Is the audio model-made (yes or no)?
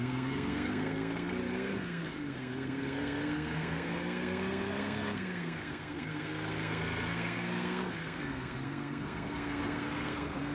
yes